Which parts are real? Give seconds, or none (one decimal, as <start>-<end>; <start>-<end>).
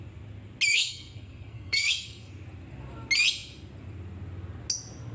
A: 0.0-0.7; 2.3-5.1